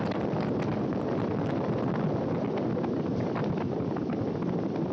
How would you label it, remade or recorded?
recorded